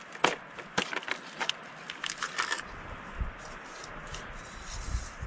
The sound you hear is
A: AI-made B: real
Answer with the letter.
B